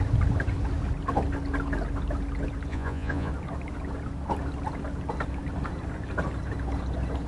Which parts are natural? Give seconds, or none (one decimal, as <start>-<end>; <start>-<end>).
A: 0.0-2.7; 3.3-7.3